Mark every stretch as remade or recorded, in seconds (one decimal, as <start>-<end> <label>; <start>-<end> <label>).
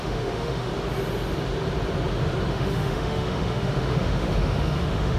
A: 0.0-0.7 remade; 0.7-2.5 recorded; 2.5-5.2 remade